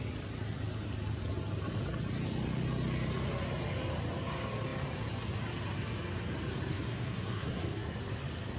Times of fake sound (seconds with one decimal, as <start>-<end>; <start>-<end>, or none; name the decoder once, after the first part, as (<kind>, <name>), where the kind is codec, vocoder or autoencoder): 6.7-8.0 (codec, SNAC)